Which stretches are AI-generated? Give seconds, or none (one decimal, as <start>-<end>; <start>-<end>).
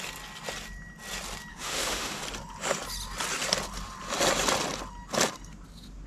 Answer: 1.5-2.2